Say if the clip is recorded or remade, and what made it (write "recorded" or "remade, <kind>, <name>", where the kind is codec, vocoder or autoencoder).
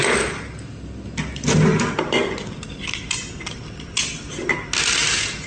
recorded